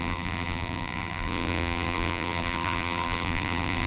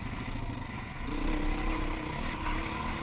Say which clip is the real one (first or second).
second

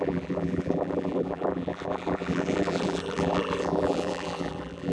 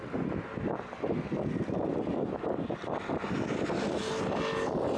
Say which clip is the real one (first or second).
second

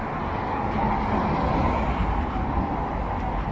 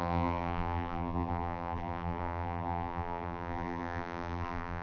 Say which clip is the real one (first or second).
first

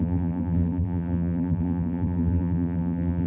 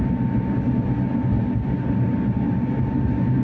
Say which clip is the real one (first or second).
second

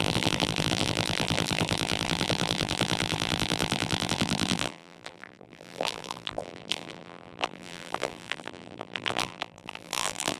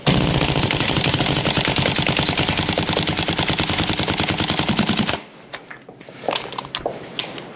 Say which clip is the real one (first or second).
second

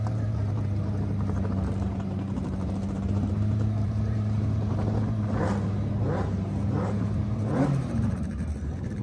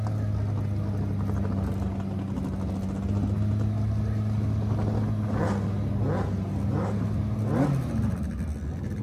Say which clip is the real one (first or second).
second